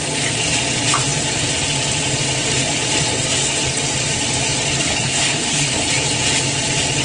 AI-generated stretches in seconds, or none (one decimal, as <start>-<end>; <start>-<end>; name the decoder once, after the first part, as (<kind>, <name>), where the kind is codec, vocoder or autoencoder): 4.8-5.9 (codec, HILCodec)